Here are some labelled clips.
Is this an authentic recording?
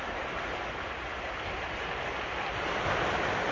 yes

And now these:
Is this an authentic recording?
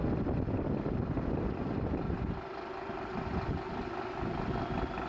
yes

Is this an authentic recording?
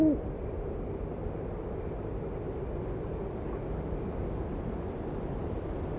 yes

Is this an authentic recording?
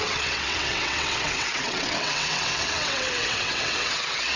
no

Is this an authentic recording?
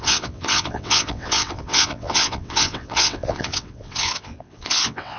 no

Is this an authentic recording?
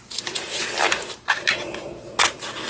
yes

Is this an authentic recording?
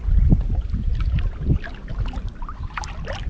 yes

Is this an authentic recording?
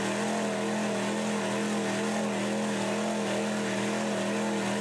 yes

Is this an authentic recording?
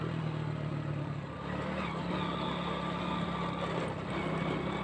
yes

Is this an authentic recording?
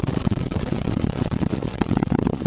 no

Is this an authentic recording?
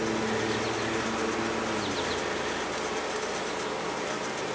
yes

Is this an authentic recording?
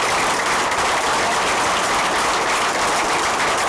yes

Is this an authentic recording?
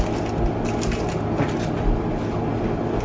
yes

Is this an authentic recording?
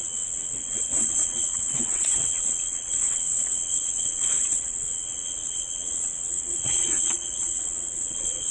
no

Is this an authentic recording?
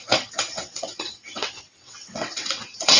no